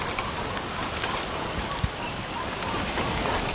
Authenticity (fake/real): real